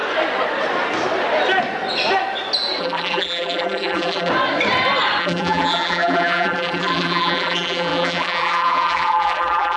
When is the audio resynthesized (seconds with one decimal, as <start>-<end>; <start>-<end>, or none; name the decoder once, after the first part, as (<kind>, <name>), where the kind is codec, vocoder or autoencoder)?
2.8-4.3 (vocoder, BigVGAN v2); 5.2-9.8